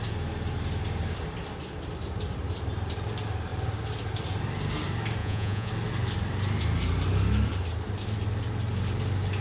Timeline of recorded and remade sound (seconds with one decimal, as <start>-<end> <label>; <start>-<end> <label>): 0.0-5.2 recorded; 5.2-5.7 remade; 5.7-9.4 recorded